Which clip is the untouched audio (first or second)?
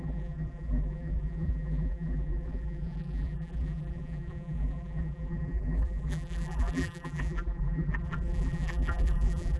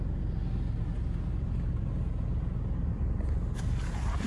second